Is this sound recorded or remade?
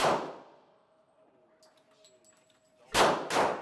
recorded